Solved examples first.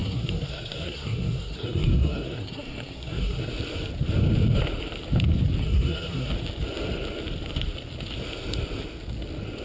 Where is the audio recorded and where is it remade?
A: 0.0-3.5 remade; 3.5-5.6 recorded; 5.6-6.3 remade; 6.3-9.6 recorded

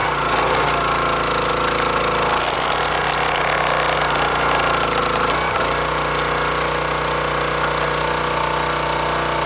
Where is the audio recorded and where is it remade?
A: 0.0-9.5 recorded

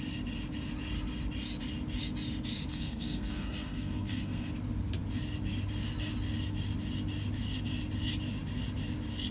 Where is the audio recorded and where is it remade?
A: 0.0-2.7 recorded; 2.7-4.5 remade; 4.5-9.3 recorded